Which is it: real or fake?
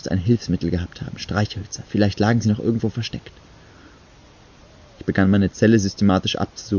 real